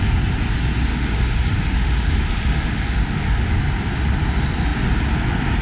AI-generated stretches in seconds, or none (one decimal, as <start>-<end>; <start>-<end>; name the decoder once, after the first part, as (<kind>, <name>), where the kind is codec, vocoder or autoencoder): 0.9-3.5 (autoencoder, DAC-VAE)